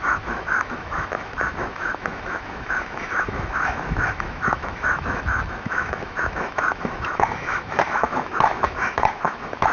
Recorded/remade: remade